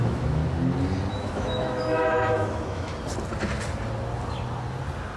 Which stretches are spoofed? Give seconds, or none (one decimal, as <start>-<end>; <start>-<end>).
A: 0.0-0.4; 1.1-2.9